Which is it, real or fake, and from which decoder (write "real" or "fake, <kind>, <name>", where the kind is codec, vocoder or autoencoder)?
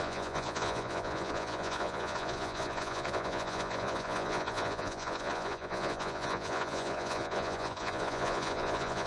fake, vocoder, Vocos